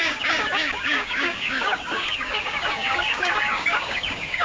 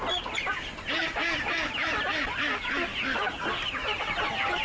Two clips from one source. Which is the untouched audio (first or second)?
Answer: second